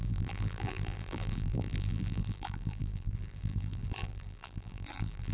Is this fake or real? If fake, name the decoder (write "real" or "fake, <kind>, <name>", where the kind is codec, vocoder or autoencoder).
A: fake, vocoder, BigVGAN v2